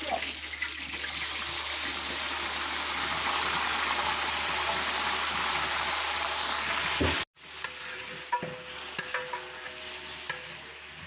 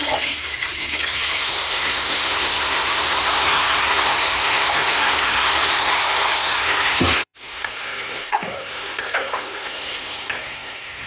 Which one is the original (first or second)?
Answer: first